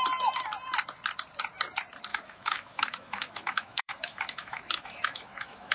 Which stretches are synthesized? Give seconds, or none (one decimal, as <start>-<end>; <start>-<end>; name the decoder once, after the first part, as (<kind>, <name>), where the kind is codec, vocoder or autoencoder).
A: 2.1-5.7 (autoencoder, DAC-VAE)